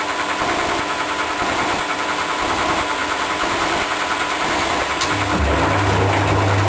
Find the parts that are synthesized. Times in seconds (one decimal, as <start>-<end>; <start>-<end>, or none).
none